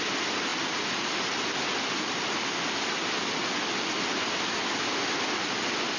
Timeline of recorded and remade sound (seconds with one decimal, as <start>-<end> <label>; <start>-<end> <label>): 0.0-6.0 recorded